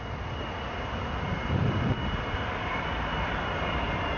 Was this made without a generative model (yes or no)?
yes